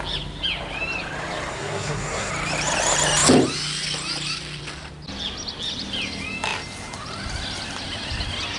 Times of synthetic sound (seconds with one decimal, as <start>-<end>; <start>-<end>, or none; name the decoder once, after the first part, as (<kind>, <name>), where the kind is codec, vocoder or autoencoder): 1.5-2.3 (codec, SNAC)